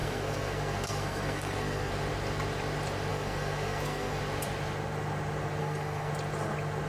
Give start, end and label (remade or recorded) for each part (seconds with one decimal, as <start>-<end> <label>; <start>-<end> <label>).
0.0-1.9 remade; 1.9-3.1 recorded; 3.1-4.2 remade; 4.2-5.6 recorded; 5.6-6.1 remade; 6.1-6.9 recorded